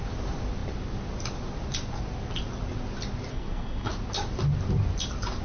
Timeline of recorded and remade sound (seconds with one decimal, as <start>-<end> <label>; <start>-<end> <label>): 0.0-3.3 recorded; 3.3-3.9 remade; 3.9-5.4 recorded